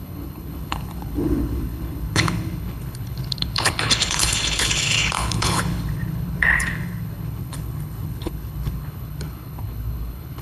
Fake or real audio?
fake